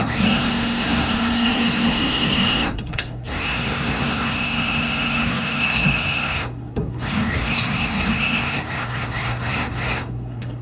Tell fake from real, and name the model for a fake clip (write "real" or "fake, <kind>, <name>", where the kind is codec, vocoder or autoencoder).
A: fake, codec, SNAC